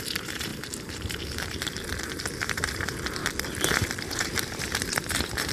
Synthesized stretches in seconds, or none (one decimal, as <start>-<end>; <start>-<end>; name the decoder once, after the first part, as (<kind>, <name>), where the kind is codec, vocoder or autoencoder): 0.0-3.2 (vocoder, BigVGAN v2); 4.0-5.5